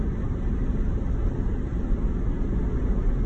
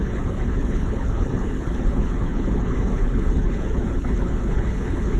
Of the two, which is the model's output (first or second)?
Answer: second